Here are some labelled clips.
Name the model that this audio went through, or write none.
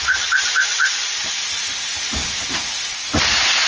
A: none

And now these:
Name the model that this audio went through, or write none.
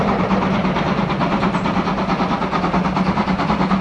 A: none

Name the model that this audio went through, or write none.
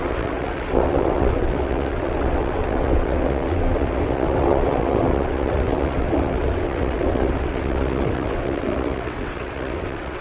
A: vocoder, WaveNeXt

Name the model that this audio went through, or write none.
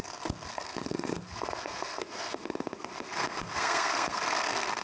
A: codec, SNAC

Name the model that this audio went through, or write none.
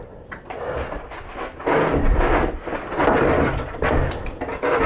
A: none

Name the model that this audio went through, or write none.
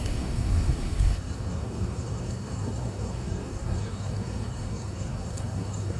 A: codec, SNAC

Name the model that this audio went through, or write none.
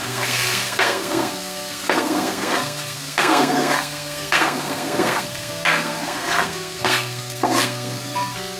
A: codec, SNAC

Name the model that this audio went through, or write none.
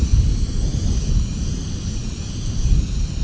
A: none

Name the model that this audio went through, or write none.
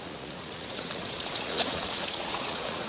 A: vocoder, Vocos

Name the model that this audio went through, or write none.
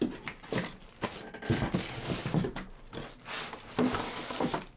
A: none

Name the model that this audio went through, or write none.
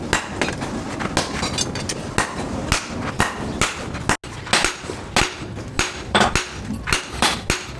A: none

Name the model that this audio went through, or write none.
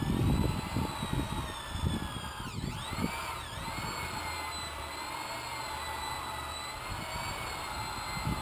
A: none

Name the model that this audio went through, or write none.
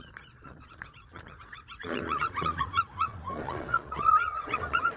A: vocoder, Vocos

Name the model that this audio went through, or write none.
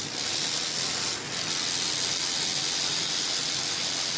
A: none